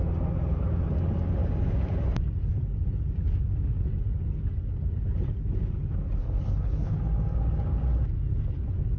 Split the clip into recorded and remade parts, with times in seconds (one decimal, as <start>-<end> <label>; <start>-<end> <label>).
0.0-6.2 recorded; 6.2-7.0 remade; 7.0-9.0 recorded